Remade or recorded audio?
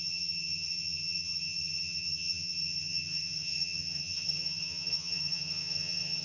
remade